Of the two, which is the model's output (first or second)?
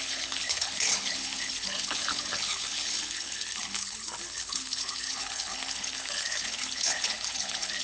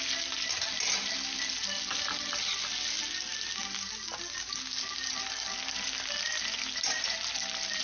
first